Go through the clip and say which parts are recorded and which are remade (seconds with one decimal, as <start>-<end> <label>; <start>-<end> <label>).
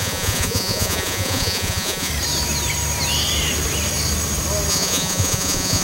0.0-2.1 remade; 2.1-4.7 recorded; 4.7-5.8 remade